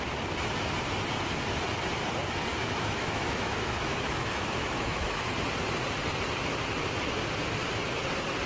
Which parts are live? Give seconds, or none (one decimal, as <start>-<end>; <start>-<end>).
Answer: 0.0-2.5; 5.2-8.5